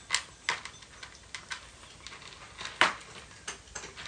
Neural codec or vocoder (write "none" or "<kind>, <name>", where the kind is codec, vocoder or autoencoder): none